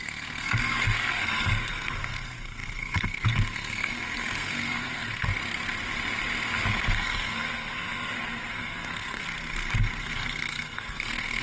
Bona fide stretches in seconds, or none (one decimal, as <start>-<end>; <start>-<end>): 5.3-6.7